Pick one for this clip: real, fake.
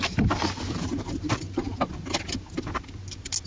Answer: real